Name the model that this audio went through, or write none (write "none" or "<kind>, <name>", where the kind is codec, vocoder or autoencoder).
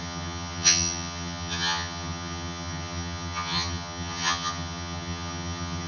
vocoder, HiFi-GAN